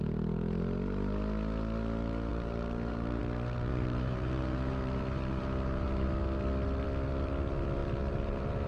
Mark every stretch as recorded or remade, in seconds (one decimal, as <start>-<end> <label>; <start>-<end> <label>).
0.0-2.3 recorded; 2.3-3.2 remade; 3.2-3.7 recorded; 3.7-6.1 remade; 6.1-7.8 recorded; 7.8-8.7 remade